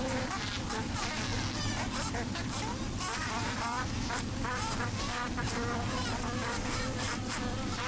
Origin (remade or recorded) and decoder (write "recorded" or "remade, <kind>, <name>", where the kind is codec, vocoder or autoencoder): remade, vocoder, BigVGAN v2